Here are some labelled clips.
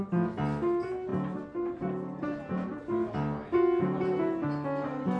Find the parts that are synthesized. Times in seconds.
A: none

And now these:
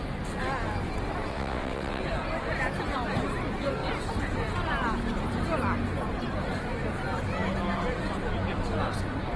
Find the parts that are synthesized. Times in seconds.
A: 1.3-2.0 (vocoder, WaveNeXt)

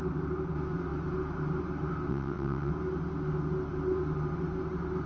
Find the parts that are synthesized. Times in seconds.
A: 2.1-2.7 (vocoder, WaveNeXt)

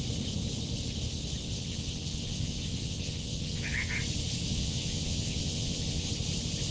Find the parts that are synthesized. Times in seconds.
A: 1.4-3.9 (vocoder, WaveNeXt); 4.5-6.1

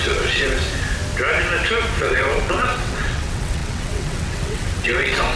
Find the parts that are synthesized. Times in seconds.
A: 0.0-0.6 (vocoder, WaveNeXt); 2.0-5.4

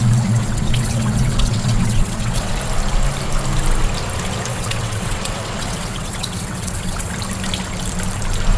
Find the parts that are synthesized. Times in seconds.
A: 0.0-2.5 (vocoder, WaveNeXt); 4.5-7.1

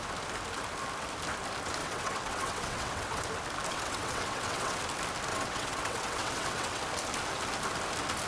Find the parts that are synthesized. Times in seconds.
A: 1.8-3.2 (vocoder, WaveNeXt); 3.7-4.8; 5.3-6.8

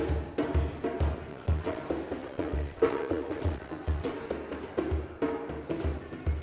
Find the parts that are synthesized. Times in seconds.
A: 1.3-1.8 (vocoder, WaveNeXt); 2.2-4.1